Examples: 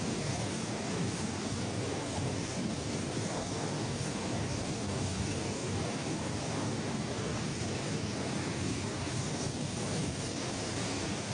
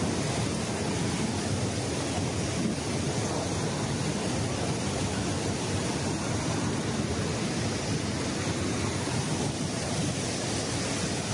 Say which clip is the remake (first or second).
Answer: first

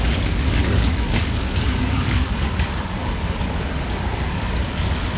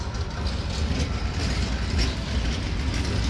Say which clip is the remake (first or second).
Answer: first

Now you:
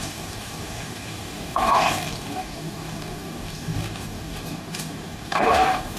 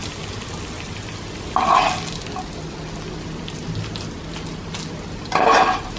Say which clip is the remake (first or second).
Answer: first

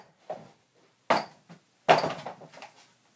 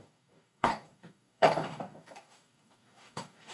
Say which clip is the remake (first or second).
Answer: second